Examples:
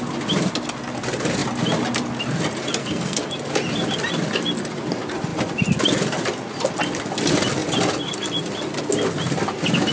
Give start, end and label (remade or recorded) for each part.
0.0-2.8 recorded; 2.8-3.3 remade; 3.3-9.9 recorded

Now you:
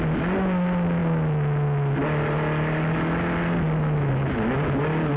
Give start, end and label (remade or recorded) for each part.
0.0-5.2 recorded